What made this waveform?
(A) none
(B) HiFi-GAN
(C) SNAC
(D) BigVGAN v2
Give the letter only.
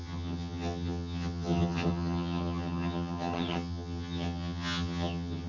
B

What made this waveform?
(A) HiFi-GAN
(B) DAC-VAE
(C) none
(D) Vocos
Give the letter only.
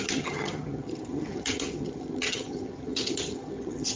A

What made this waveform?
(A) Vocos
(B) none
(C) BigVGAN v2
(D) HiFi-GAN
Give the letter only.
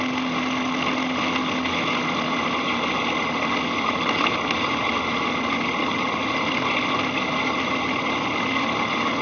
B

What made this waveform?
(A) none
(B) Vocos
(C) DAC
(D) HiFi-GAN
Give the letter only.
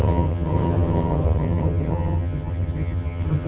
D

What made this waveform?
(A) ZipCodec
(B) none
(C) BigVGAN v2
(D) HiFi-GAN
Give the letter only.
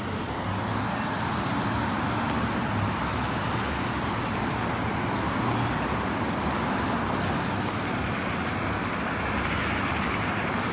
B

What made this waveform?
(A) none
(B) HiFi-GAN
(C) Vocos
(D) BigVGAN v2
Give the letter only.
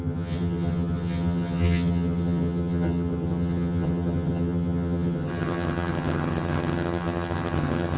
B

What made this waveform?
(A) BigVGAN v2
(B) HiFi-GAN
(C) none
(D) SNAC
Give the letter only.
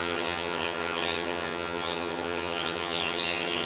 B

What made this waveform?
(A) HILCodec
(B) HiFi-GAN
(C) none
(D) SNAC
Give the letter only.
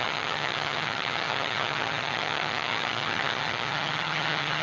B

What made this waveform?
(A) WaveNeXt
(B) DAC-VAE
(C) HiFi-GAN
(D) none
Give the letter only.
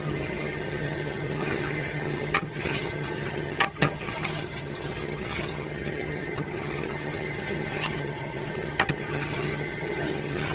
C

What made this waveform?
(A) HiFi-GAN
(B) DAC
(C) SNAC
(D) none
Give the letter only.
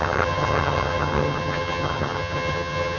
A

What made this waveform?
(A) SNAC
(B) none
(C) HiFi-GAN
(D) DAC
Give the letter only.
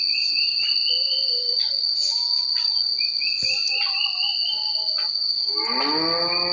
B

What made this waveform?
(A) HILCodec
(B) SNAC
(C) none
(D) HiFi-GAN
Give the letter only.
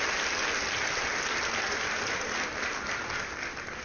C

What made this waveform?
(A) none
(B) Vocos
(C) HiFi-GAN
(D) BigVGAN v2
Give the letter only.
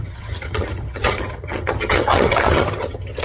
C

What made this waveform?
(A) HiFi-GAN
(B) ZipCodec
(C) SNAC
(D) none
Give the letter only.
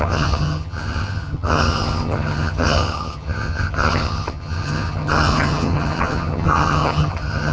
A